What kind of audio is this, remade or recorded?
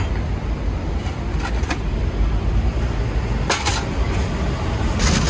recorded